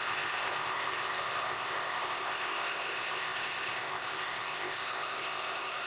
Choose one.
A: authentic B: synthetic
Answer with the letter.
B